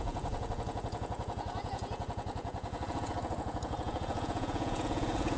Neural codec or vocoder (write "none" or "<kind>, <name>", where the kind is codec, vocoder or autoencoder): vocoder, Vocos